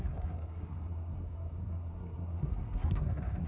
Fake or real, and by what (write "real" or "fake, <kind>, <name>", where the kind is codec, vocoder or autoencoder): fake, codec, SNAC